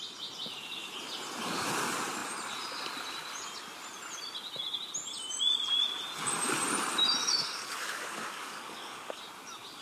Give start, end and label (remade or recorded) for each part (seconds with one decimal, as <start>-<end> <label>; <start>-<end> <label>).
0.0-7.2 recorded; 7.2-9.2 remade; 9.2-9.8 recorded